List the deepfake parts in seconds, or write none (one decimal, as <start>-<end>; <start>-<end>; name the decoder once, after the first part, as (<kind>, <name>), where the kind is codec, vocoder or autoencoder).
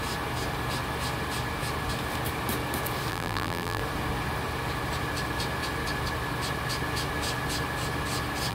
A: 3.1-3.8 (vocoder, BigVGAN v2)